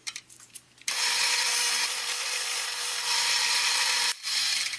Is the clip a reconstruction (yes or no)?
yes